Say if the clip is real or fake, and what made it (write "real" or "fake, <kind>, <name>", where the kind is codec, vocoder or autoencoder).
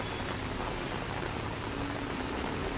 real